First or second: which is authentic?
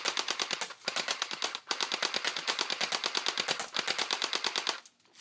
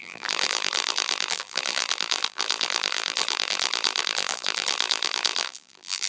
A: first